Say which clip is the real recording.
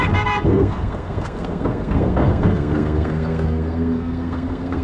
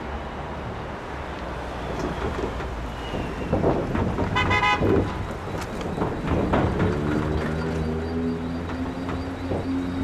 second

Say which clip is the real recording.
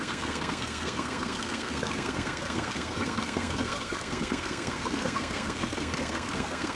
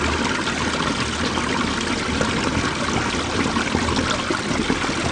second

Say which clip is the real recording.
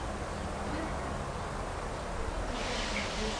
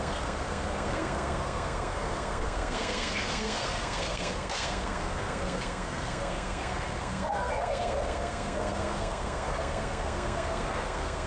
first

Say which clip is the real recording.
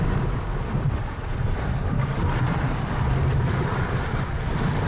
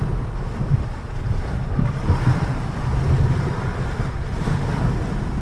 second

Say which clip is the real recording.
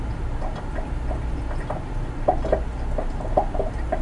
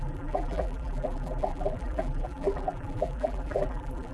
first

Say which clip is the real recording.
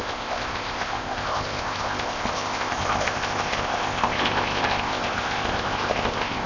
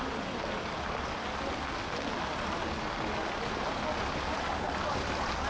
second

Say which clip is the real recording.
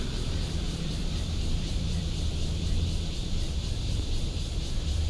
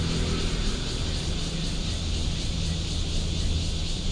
second